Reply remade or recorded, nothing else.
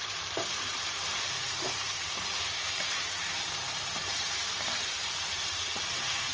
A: remade